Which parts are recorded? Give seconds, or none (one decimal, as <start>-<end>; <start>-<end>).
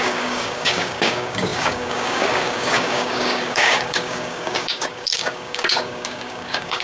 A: none